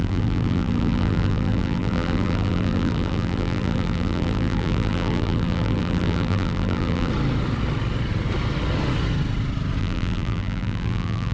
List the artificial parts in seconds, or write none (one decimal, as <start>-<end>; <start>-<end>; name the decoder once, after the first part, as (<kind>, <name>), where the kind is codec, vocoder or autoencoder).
0.0-7.1 (vocoder, BigVGAN v2); 9.8-11.3